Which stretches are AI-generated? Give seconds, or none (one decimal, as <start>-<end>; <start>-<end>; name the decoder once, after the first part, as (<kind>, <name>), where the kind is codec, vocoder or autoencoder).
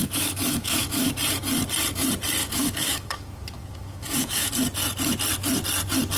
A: 0.0-1.1 (autoencoder, DAC-VAE); 2.4-4.5